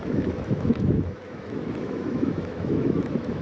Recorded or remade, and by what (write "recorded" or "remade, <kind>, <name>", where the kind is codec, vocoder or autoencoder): remade, autoencoder, DAC-VAE